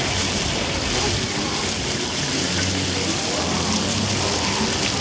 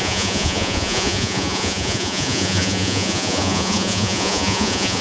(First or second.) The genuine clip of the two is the first